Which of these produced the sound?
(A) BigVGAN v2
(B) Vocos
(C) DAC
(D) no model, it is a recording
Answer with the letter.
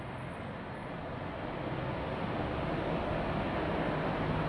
D